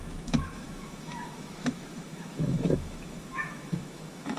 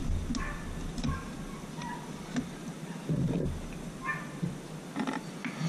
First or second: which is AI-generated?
first